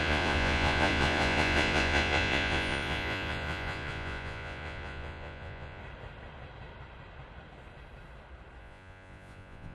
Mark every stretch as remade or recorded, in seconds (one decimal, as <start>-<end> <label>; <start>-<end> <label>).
0.0-5.8 remade; 5.8-8.6 recorded; 8.6-9.7 remade